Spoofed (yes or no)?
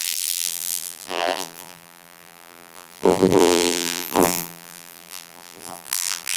yes